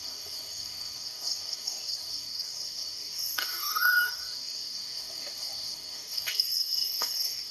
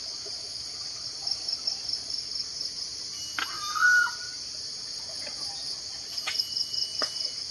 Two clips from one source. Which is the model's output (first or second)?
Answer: first